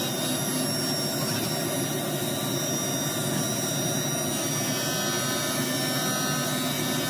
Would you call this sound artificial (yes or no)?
no